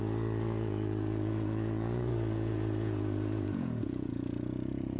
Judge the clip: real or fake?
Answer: fake